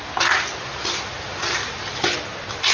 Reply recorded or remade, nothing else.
recorded